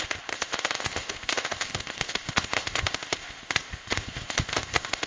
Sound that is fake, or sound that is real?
fake